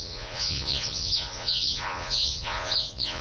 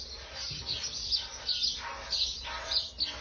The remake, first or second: first